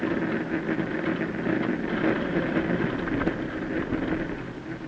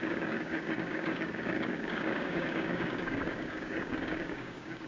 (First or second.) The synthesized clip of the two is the second